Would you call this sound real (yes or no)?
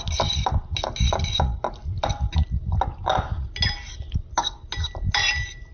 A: yes